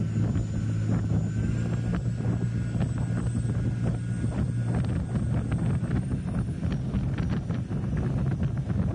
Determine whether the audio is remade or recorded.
recorded